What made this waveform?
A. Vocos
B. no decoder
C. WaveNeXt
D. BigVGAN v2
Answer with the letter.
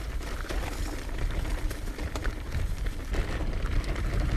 B